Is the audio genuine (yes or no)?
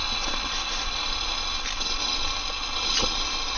yes